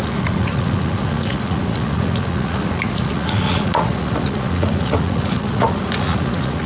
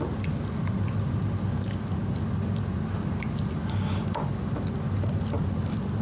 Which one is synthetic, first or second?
first